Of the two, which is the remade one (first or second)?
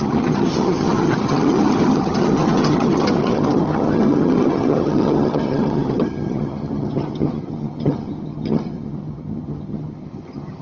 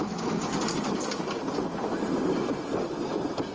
first